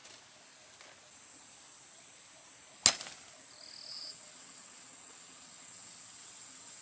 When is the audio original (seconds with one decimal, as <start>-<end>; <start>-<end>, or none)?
0.0-3.9